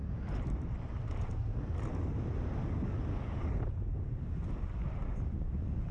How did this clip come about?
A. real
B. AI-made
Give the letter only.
A